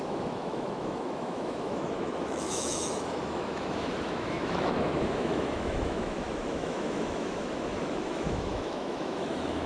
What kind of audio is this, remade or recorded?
remade